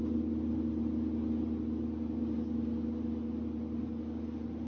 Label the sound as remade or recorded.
recorded